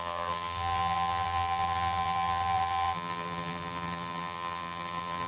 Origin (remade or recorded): remade